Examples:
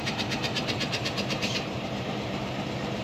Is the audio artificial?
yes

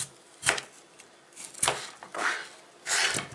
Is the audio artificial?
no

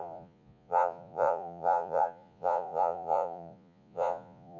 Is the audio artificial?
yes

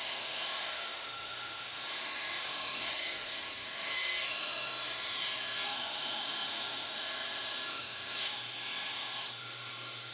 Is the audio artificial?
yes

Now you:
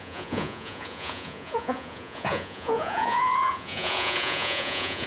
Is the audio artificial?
yes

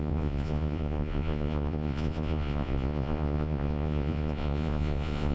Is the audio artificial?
yes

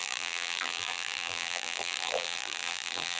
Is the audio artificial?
yes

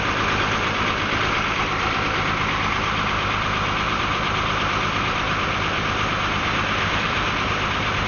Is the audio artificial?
yes